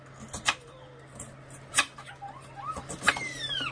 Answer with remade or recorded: recorded